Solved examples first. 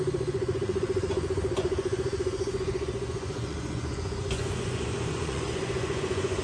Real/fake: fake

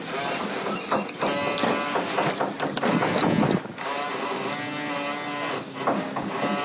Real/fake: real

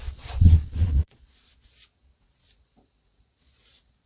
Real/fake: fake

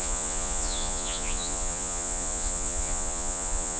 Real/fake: fake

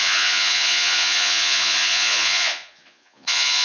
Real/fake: fake